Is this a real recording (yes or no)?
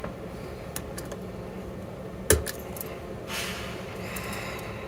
yes